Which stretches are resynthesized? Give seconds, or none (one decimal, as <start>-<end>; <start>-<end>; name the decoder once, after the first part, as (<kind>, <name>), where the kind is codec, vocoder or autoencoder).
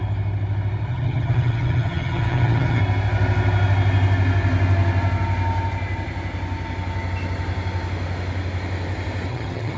0.9-2.8 (vocoder, HiFi-GAN); 9.3-9.8